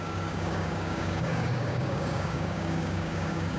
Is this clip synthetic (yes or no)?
yes